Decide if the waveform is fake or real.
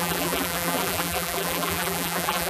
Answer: fake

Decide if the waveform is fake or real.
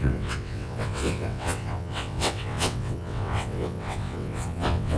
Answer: fake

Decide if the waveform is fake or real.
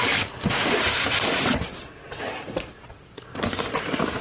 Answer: real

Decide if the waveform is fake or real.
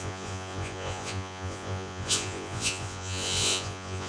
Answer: fake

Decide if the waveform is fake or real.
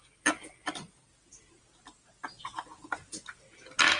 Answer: real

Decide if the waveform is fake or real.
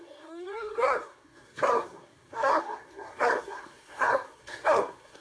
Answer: fake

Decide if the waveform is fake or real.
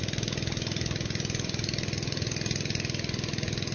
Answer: real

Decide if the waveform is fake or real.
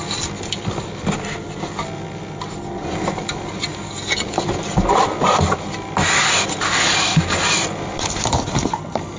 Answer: real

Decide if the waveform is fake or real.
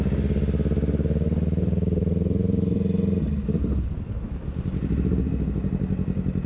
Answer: real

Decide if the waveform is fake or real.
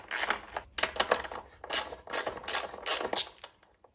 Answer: real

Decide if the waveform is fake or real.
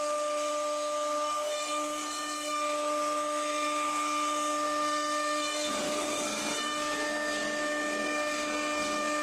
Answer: fake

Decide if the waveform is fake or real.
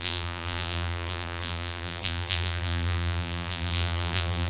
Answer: fake